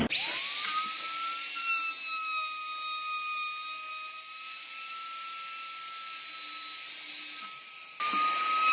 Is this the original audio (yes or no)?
yes